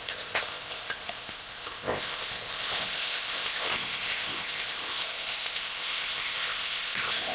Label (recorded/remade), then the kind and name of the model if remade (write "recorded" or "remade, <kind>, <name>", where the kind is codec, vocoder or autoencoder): remade, codec, ZipCodec